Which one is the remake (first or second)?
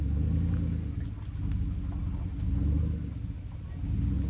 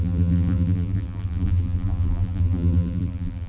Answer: second